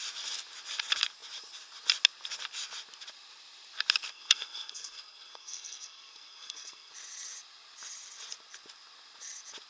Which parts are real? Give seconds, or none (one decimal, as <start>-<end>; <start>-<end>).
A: 0.0-4.1; 6.9-9.7